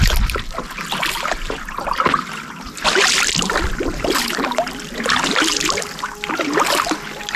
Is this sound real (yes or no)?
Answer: yes